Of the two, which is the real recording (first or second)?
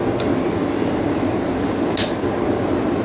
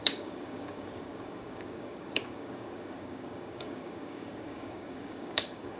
first